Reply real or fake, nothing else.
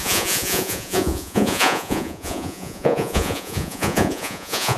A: fake